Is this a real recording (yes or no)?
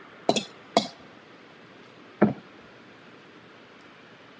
yes